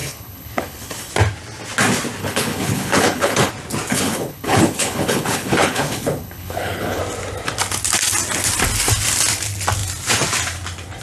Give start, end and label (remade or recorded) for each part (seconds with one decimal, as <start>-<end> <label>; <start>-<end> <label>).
0.0-1.1 remade; 1.1-2.2 recorded; 2.2-3.5 remade; 3.5-3.9 recorded; 3.9-7.0 remade; 7.0-11.0 recorded